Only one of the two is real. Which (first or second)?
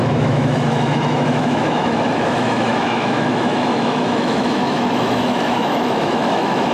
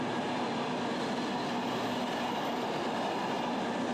second